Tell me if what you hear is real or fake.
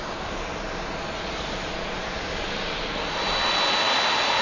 real